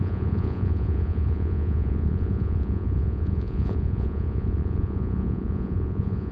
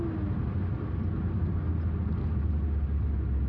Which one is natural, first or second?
second